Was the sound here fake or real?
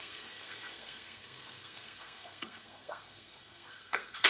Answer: fake